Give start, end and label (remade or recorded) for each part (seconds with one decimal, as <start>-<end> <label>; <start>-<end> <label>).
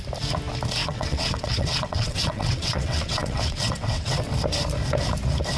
0.0-0.8 recorded; 0.8-4.2 remade; 4.2-5.6 recorded